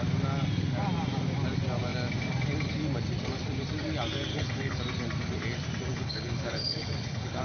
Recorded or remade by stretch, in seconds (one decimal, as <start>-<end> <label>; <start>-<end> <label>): 0.0-4.3 recorded; 4.3-4.8 remade; 4.8-5.9 recorded; 5.9-7.4 remade

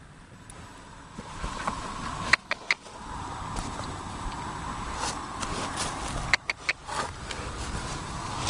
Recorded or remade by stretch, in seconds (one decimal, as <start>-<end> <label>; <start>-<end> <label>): 0.0-0.7 remade; 0.7-4.6 recorded; 4.6-6.8 remade; 6.8-7.7 recorded; 7.7-8.5 remade

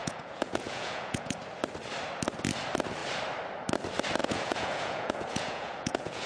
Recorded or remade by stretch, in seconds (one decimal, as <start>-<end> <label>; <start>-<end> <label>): 0.0-1.4 remade; 1.4-4.2 recorded; 4.2-6.3 remade

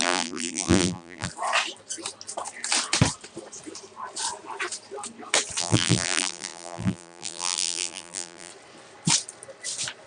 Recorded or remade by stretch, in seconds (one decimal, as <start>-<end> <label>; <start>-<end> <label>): 0.0-1.3 remade; 1.3-5.6 recorded; 5.6-8.5 remade; 8.5-10.1 recorded

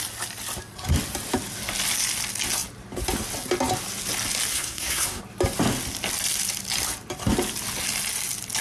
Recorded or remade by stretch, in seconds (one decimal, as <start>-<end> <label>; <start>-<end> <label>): 0.0-4.5 recorded; 4.5-5.2 remade; 5.2-8.6 recorded